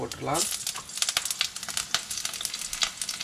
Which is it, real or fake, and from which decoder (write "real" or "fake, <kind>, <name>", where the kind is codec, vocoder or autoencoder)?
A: real